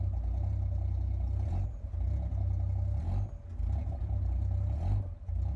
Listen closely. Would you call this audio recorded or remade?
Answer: recorded